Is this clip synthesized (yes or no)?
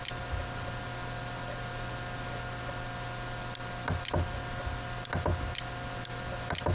no